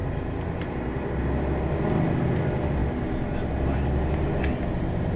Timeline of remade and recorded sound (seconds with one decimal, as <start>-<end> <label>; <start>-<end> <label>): 0.0-5.2 recorded